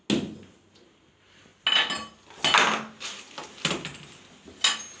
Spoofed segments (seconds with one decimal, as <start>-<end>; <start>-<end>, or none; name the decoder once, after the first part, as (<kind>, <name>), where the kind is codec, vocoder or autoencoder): none